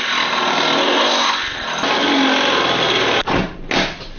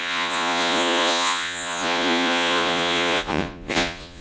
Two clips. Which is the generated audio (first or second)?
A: second